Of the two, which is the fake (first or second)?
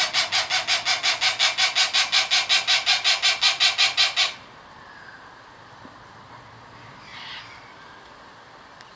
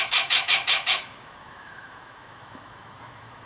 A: second